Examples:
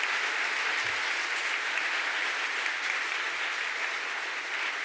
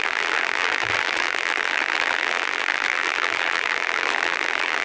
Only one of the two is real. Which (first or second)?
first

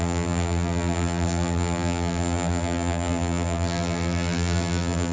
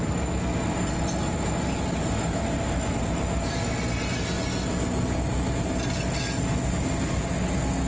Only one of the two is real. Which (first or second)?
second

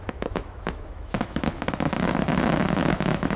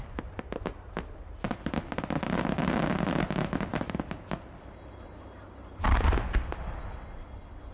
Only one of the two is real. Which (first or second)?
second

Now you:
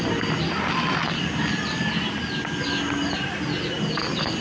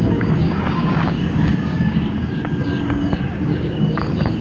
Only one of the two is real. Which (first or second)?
first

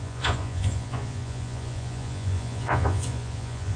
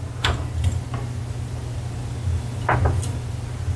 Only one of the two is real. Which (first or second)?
second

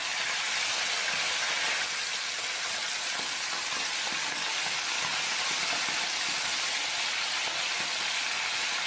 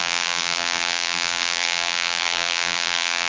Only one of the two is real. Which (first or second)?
first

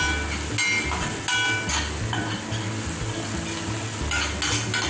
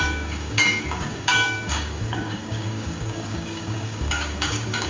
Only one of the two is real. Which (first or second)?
first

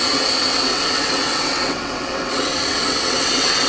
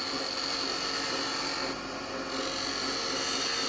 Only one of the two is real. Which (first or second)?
second